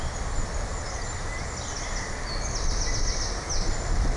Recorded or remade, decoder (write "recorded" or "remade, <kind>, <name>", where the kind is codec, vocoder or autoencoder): recorded